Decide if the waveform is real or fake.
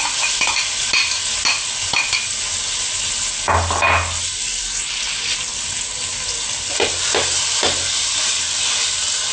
real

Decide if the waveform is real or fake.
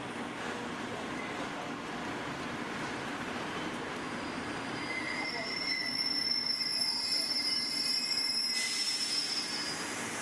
real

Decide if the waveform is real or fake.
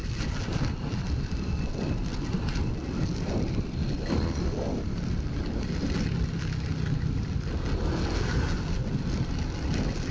real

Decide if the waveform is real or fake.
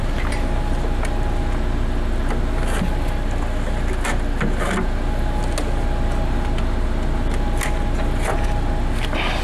real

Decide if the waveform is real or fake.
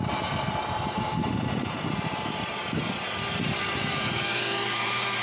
fake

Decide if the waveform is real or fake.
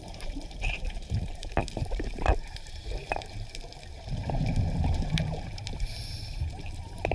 fake